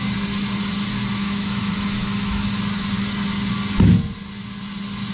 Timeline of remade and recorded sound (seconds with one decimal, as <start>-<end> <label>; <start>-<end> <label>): 0.0-1.2 recorded; 1.2-2.6 remade; 2.6-5.1 recorded